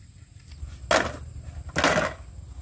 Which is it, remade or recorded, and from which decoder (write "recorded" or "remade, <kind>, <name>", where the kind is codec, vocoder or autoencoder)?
recorded